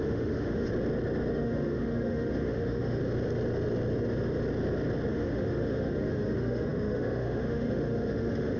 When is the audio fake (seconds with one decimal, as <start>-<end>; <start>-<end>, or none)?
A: 0.0-0.7; 1.3-3.0; 5.1-8.6